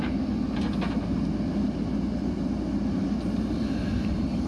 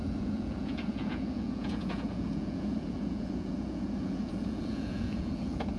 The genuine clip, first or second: first